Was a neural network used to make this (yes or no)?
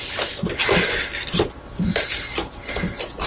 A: no